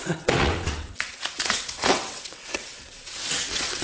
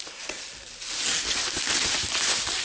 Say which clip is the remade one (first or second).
first